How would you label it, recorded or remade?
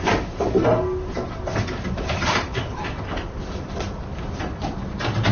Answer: recorded